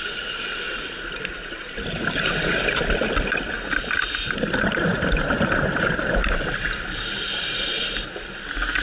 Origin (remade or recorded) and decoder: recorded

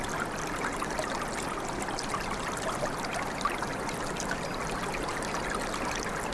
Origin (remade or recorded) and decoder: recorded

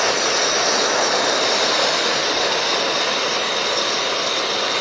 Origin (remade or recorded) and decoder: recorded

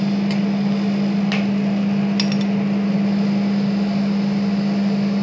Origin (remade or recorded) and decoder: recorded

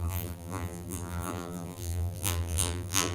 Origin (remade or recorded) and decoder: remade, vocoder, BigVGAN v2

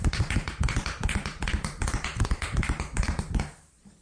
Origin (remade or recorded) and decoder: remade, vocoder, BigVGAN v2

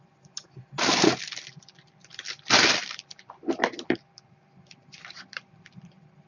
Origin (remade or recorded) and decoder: remade, vocoder, BigVGAN v2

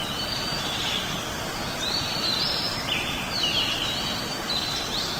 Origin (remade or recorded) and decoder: recorded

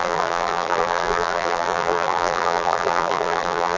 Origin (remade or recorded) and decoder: remade, vocoder, BigVGAN v2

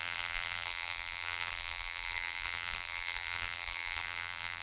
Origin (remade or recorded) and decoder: remade, vocoder, BigVGAN v2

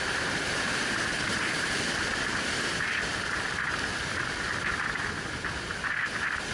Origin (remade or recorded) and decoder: recorded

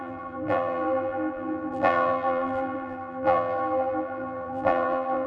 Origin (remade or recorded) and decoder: remade, vocoder, BigVGAN v2